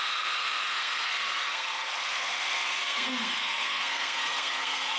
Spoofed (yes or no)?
yes